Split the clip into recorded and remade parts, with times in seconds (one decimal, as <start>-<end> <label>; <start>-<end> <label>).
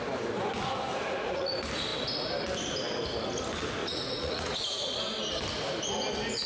0.0-0.9 recorded; 0.9-1.5 remade; 1.5-3.8 recorded; 3.8-4.9 remade; 4.9-6.5 recorded